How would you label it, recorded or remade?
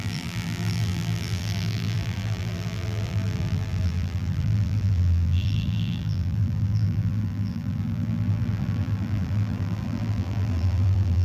remade